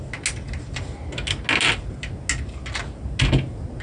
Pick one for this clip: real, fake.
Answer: real